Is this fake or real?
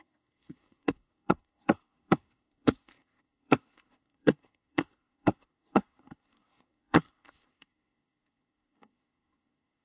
fake